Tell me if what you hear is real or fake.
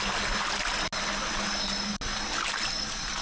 real